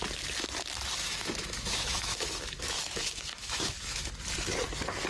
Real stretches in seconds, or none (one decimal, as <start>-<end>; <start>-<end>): 0.0-1.0; 4.1-5.1